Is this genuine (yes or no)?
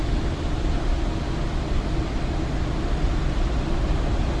yes